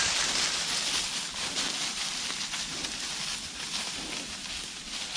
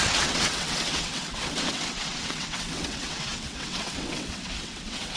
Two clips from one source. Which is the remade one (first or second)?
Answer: second